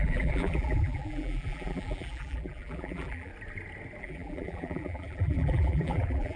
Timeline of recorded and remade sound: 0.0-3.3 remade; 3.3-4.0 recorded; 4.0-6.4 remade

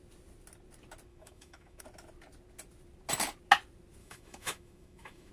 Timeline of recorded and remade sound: 0.0-1.1 recorded; 1.1-1.8 remade; 1.8-4.0 recorded; 4.0-5.3 remade

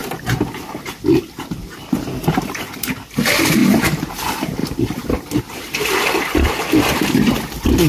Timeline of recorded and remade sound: 0.0-0.8 remade; 0.8-1.6 recorded; 1.6-2.9 remade; 2.9-3.6 recorded; 3.6-4.1 remade; 4.1-4.6 recorded; 4.6-5.4 remade; 5.4-7.9 recorded

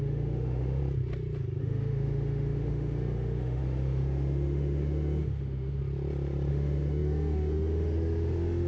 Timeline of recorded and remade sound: 0.0-0.8 remade; 0.8-1.6 recorded; 1.6-5.8 remade; 5.8-6.5 recorded; 6.5-8.7 remade

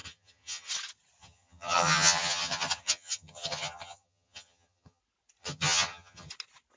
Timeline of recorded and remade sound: 0.0-0.7 remade; 0.7-1.2 recorded; 1.2-5.0 remade; 5.0-5.4 recorded; 5.4-6.3 remade; 6.3-6.8 recorded

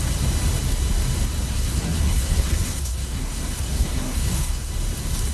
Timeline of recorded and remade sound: 0.0-1.5 recorded; 1.5-4.7 remade; 4.7-5.3 recorded

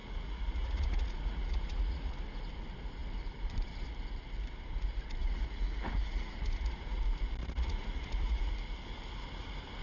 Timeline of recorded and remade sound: 0.0-2.1 remade; 2.1-5.2 recorded; 5.2-7.0 remade; 7.0-7.4 recorded; 7.4-8.5 remade; 8.5-9.8 recorded

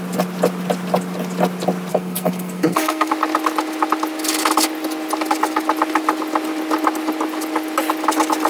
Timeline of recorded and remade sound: 0.0-1.9 recorded; 1.9-3.1 remade; 3.1-8.5 recorded